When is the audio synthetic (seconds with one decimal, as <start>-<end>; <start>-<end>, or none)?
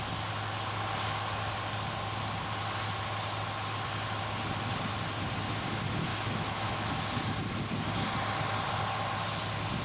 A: 6.1-6.9